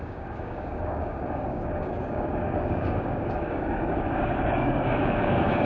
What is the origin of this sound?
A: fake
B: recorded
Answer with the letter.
A